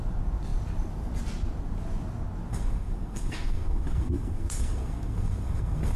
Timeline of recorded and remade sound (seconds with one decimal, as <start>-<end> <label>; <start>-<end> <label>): 0.0-2.5 recorded; 2.5-6.0 remade